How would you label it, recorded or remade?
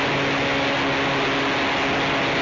recorded